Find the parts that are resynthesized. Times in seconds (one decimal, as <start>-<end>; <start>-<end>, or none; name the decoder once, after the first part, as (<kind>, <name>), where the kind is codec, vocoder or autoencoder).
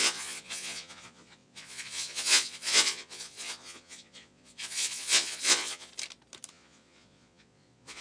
0.0-5.9 (vocoder, Vocos); 6.5-8.0